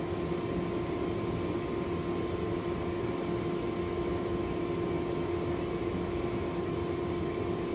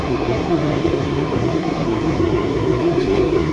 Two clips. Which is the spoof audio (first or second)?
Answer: second